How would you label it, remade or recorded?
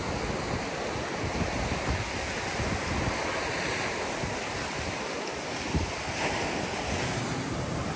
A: recorded